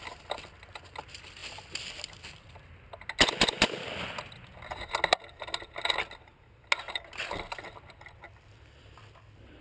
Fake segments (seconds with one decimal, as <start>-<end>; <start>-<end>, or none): none